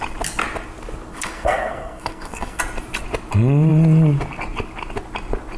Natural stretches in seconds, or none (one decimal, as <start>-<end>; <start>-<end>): 0.0-1.1; 2.6-5.6